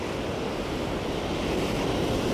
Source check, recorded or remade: recorded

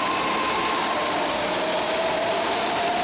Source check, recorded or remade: recorded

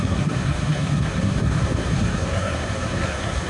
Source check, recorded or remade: remade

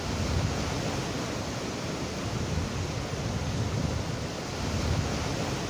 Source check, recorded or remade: recorded